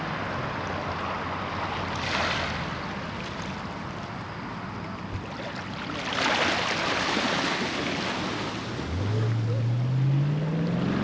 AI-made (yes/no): no